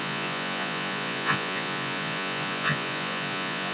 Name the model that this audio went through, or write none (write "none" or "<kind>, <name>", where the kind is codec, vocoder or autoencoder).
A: vocoder, Vocos